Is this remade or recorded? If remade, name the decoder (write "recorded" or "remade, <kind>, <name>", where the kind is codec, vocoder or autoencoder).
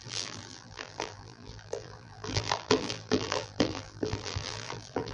remade, vocoder, BigVGAN v2